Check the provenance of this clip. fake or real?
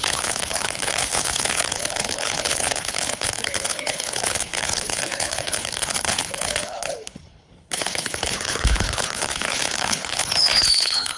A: fake